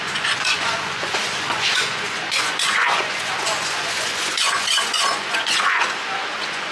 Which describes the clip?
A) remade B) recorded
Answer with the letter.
A